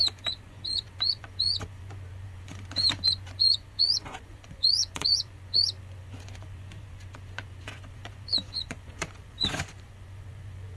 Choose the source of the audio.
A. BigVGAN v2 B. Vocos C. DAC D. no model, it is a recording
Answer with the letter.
B